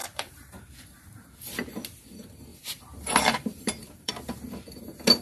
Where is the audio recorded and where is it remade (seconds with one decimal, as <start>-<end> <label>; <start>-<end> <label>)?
0.0-0.6 remade; 0.6-2.5 recorded; 2.5-4.1 remade; 4.1-5.2 recorded